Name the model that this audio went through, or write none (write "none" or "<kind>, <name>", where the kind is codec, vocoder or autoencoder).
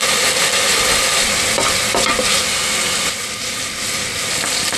none